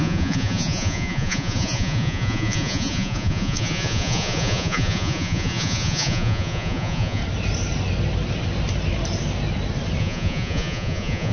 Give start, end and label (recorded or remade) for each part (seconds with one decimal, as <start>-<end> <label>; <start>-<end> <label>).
0.0-7.2 remade; 7.2-10.0 recorded; 10.0-11.3 remade